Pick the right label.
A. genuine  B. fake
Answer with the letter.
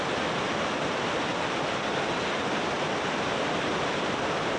A